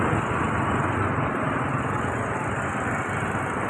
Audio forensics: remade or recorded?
recorded